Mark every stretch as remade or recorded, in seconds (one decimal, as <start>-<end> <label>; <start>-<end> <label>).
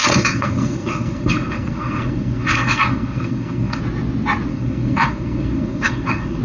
0.0-3.8 remade; 3.8-4.5 recorded; 4.5-6.4 remade